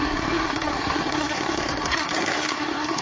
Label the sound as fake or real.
fake